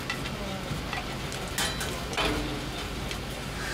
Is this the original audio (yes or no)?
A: yes